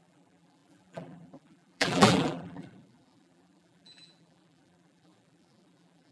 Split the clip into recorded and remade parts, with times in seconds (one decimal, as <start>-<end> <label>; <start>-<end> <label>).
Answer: 0.0-6.1 remade